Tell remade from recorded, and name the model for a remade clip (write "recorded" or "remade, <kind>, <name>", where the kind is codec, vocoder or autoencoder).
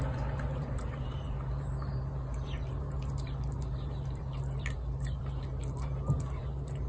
remade, vocoder, BigVGAN v2